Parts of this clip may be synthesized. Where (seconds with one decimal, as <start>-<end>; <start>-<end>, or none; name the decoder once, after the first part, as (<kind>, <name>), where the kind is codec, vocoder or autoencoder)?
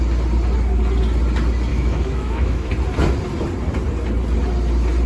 1.7-2.7 (autoencoder, DAC-VAE)